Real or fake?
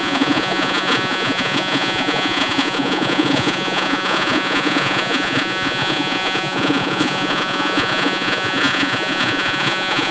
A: fake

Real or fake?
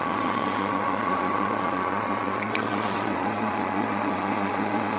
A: fake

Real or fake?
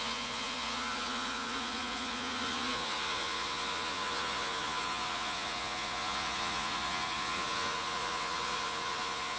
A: fake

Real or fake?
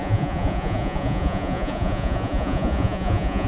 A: fake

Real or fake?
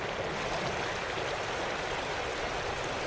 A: real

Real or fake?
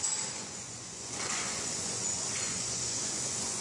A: fake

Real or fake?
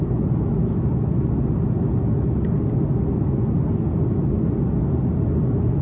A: real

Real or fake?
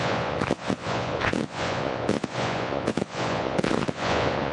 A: fake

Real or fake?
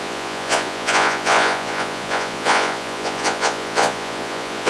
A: fake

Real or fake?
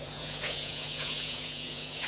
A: fake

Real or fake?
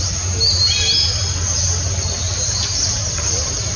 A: real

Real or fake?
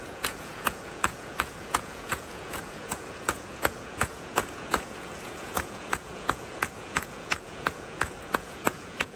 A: fake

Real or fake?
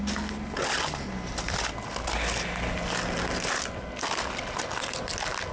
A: real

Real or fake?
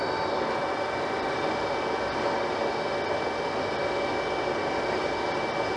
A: real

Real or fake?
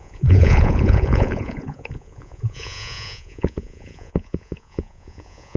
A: fake